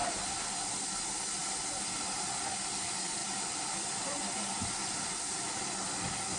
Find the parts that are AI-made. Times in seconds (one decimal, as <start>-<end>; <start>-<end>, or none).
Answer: 3.2-5.5